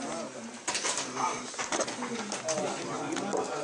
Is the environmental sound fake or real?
real